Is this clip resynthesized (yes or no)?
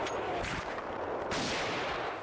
no